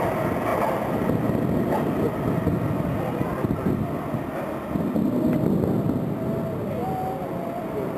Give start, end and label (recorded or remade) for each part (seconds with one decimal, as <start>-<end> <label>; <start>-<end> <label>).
0.0-8.0 recorded